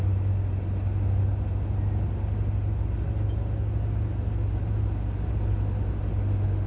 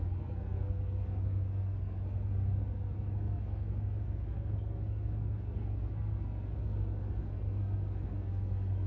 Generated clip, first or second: second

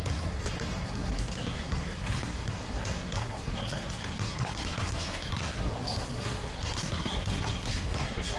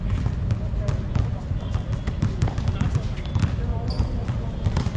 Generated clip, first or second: first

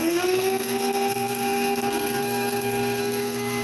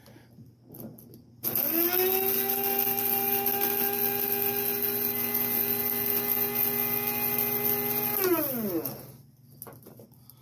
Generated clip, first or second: first